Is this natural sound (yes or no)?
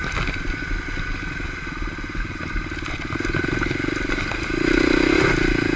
yes